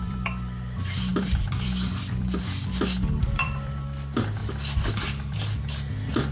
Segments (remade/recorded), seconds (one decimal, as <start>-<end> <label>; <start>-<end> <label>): 0.0-4.4 remade; 4.4-5.7 recorded; 5.7-6.3 remade